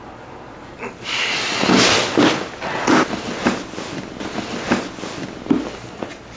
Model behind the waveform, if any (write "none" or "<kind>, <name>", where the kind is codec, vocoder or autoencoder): none